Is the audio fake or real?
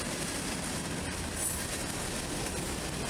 real